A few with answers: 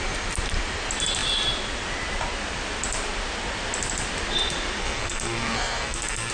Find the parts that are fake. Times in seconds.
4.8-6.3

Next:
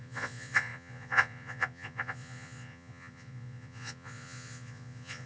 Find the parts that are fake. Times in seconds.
0.0-5.3

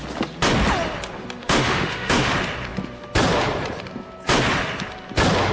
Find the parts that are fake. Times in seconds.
1.4-2.3